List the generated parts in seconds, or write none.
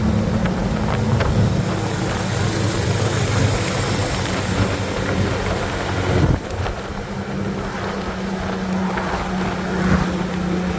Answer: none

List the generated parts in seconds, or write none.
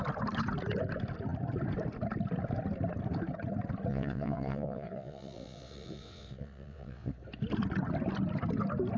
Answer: 3.9-7.1 (vocoder, WaveNeXt)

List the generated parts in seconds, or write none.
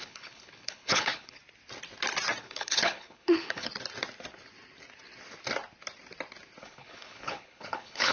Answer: 0.0-1.4 (codec, HILCodec); 2.4-3.7; 6.6-8.1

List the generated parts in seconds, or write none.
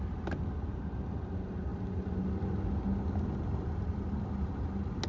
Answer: none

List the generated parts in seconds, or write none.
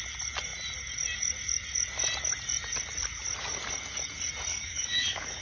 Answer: 4.5-5.4 (codec, DAC)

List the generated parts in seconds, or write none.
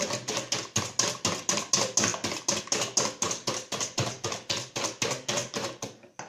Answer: none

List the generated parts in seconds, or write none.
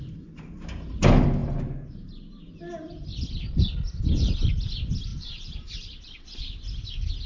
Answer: 5.1-6.6 (vocoder, BigVGAN v2)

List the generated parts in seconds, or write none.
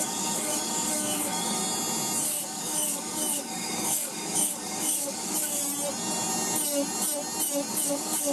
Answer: 0.0-1.6 (codec, DAC); 2.2-5.6; 7.7-8.3